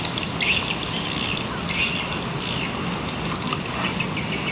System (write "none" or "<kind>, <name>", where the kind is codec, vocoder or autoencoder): none